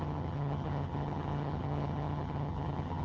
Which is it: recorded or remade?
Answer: remade